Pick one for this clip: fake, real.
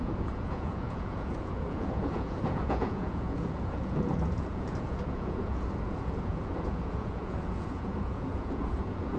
fake